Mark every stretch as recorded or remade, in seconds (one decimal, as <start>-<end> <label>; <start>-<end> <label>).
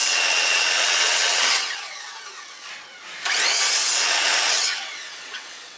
0.0-2.7 remade; 2.7-3.8 recorded; 3.8-5.8 remade